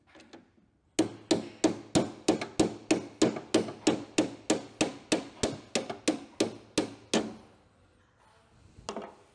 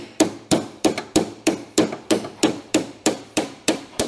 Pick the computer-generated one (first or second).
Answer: second